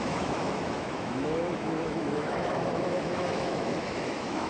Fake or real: fake